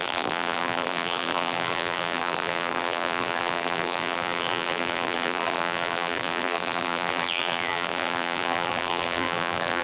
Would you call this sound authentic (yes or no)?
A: no